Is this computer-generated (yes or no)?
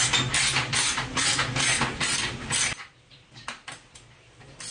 no